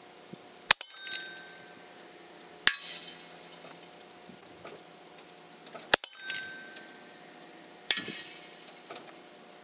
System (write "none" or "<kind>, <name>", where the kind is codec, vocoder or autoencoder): none